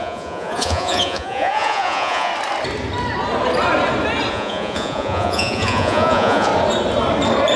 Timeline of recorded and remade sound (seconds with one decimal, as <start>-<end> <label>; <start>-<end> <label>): 0.0-2.3 remade; 2.3-4.3 recorded; 4.3-6.5 remade; 6.5-7.6 recorded